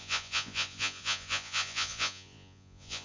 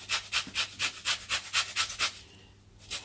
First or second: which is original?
second